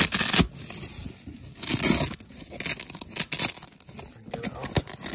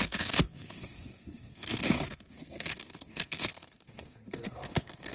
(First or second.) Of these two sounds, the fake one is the second